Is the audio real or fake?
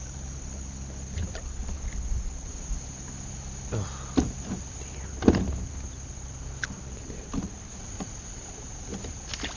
real